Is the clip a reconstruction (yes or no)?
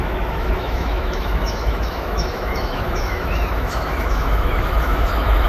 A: yes